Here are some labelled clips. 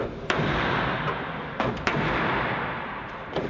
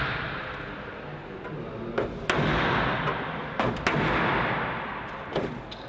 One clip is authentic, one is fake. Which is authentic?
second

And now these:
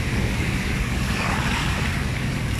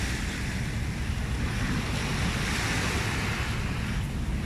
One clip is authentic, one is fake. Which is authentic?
second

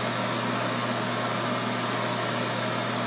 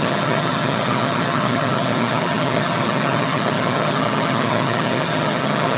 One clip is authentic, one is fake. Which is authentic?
first